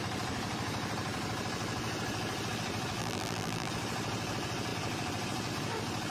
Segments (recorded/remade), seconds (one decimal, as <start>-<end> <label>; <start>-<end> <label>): 0.0-3.0 recorded; 3.0-3.7 remade; 3.7-6.1 recorded